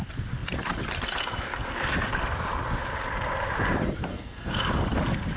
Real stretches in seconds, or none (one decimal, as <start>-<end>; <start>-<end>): 0.0-4.1; 4.6-5.4

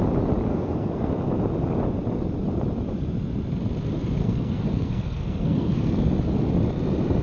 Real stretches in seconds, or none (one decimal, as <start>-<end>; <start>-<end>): 0.0-0.5; 1.1-4.2; 5.9-7.2